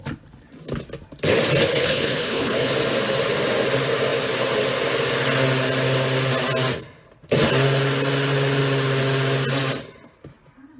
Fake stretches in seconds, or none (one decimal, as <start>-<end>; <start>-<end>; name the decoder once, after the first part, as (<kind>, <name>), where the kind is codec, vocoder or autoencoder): 1.7-2.7 (codec, HILCodec)